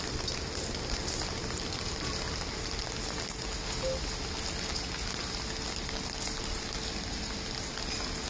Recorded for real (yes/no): yes